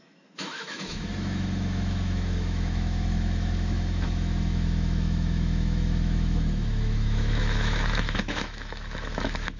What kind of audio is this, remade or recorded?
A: remade